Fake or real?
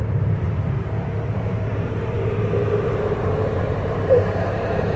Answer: fake